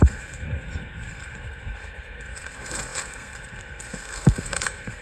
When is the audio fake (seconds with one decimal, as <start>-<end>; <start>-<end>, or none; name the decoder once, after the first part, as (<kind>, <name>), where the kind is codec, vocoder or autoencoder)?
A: 0.0-5.0 (codec, SNAC)